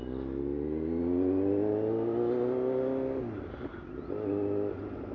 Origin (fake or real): real